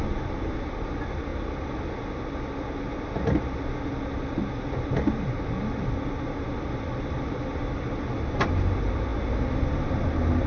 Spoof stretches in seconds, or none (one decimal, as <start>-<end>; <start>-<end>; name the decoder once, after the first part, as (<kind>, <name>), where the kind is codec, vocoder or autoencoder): none